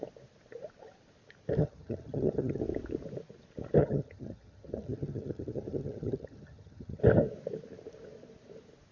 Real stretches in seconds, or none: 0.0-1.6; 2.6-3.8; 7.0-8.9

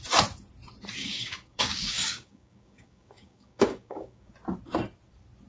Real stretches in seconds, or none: 0.0-1.0; 4.3-5.5

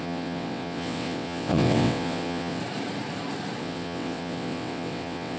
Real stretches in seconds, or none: 2.6-3.6

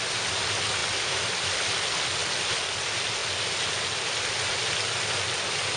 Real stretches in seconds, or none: 0.0-5.8

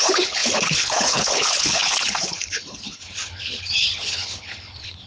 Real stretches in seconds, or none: none

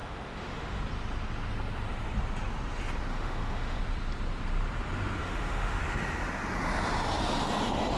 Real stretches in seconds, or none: 0.8-3.1; 3.8-5.2; 5.8-8.0

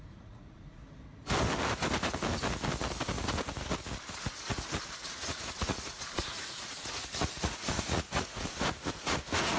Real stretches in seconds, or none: 0.8-5.1